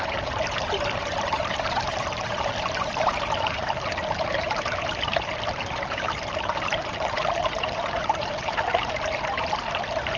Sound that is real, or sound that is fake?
fake